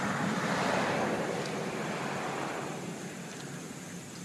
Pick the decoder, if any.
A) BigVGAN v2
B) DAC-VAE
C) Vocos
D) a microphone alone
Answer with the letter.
D